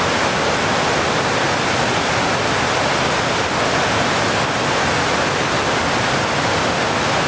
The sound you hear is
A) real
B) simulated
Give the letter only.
A